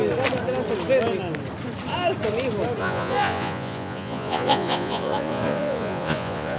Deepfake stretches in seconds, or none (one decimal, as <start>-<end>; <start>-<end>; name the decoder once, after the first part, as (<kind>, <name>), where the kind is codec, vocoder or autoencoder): 2.8-6.6 (vocoder, Vocos)